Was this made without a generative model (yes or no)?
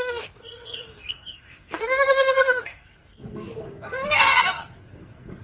no